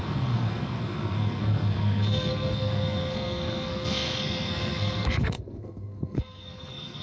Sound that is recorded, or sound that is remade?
remade